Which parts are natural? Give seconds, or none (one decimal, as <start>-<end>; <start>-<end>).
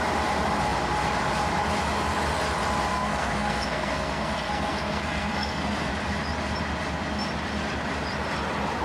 0.0-2.9; 5.9-8.8